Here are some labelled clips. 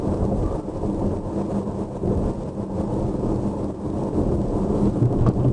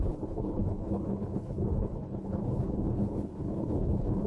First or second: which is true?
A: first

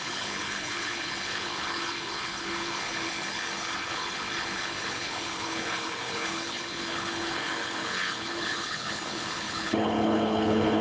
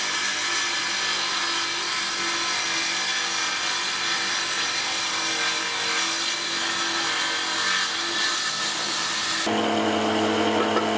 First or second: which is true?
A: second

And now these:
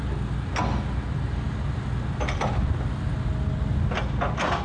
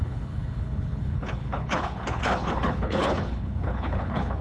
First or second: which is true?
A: first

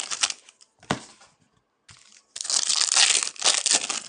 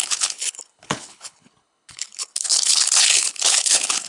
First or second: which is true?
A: first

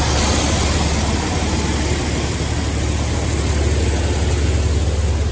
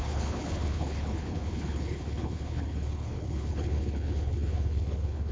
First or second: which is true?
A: first